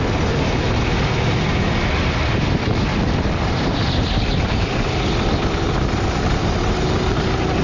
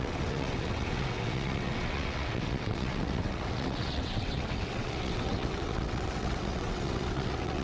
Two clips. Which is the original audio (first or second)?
first